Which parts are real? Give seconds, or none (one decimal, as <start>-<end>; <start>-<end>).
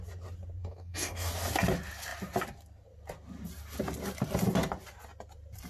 0.0-0.6; 1.3-5.7